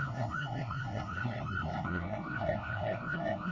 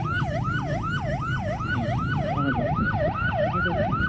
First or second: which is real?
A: second